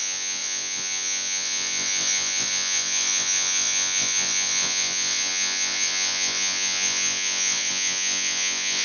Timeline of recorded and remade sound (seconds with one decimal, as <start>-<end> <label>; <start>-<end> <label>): 0.0-8.8 remade